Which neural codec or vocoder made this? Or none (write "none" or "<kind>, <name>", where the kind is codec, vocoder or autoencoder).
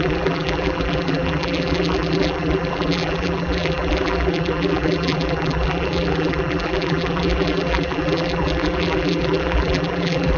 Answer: vocoder, BigVGAN v2